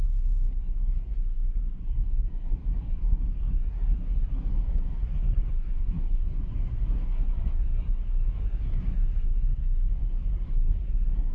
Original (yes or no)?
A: no